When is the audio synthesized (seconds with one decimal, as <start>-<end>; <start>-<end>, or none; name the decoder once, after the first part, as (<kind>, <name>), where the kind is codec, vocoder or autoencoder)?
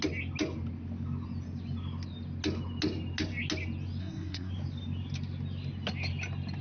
4.0-4.5 (codec, SNAC)